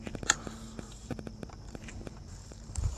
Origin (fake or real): fake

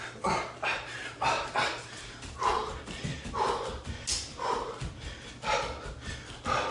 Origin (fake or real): real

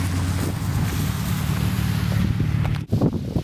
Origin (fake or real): real